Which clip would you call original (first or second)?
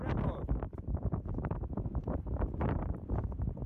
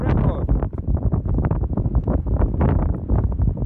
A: second